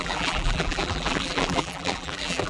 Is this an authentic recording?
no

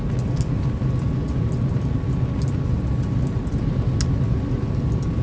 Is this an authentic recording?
yes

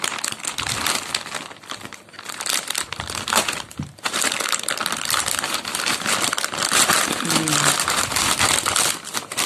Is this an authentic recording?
no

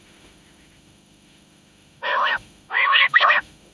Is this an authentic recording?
no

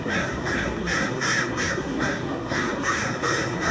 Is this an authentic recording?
no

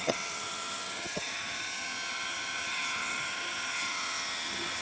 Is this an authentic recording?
no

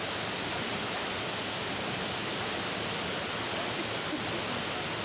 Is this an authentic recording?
yes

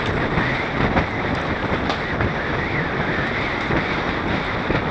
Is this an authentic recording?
yes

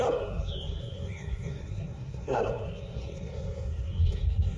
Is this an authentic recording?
no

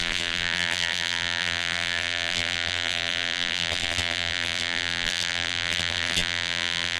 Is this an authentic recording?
no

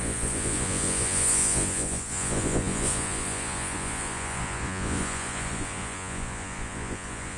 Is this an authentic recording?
no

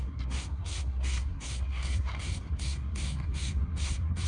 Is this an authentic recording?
no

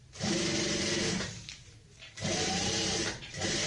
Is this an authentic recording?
no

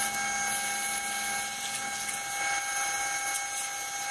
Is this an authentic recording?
yes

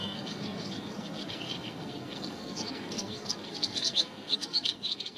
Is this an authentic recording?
no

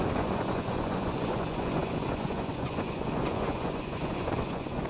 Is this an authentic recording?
no